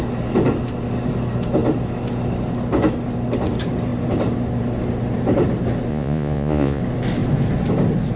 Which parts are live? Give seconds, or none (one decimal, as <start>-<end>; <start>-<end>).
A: 0.0-5.9; 6.8-8.2